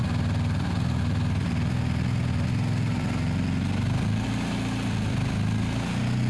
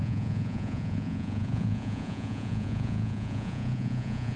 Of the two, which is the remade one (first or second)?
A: second